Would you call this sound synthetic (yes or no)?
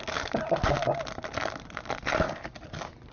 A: no